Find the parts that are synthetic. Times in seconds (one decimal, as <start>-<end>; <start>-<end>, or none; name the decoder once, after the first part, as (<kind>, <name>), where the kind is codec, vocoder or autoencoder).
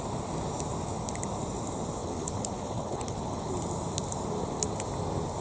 2.0-3.5 (codec, HILCodec)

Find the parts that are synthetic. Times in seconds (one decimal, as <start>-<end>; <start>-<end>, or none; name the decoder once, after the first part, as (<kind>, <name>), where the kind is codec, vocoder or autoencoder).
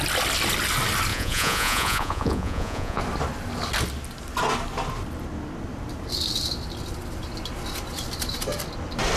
1.1-3.0 (vocoder, Vocos)